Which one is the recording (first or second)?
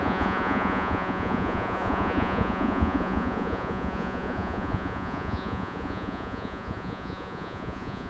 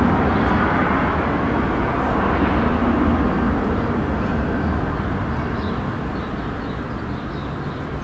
second